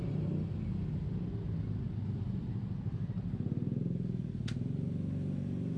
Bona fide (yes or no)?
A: yes